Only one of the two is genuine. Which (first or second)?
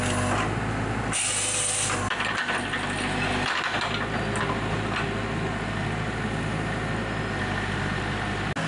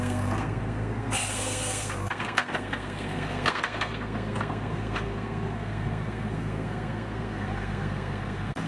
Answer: first